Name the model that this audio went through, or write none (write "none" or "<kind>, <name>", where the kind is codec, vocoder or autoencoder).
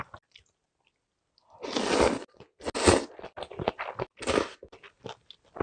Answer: none